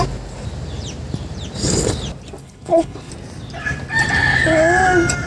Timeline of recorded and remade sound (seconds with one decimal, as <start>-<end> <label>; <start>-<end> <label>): 0.0-2.4 recorded; 2.4-3.1 remade; 3.1-5.3 recorded